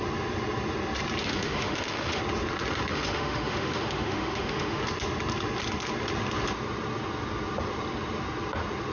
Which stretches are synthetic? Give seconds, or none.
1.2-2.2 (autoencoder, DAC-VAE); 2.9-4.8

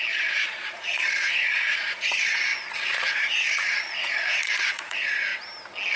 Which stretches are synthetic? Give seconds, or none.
0.0-5.3 (vocoder, Vocos)

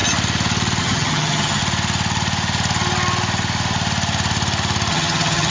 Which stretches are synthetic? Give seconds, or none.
0.8-1.6 (vocoder, HiFi-GAN); 4.9-5.5

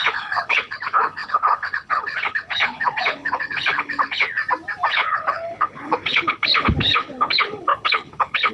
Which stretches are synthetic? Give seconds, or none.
0.0-4.4 (codec, HILCodec); 4.9-8.5

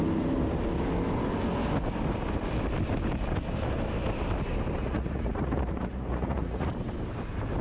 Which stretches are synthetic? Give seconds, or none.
4.8-6.7 (vocoder, Vocos)

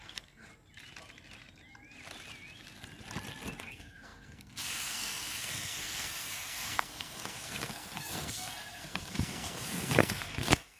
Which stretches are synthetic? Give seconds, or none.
0.0-0.5 (codec, SNAC); 3.6-10.8

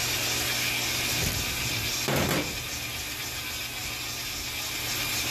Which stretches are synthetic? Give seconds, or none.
none